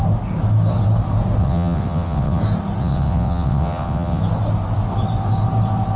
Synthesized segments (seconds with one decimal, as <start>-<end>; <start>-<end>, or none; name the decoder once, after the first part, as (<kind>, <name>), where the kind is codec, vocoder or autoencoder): 1.4-2.4 (vocoder, WaveNeXt); 2.8-4.2